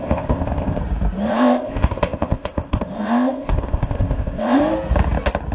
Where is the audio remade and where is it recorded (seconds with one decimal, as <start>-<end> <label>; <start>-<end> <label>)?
0.0-0.8 remade; 0.8-1.3 recorded; 1.3-4.6 remade; 4.6-5.5 recorded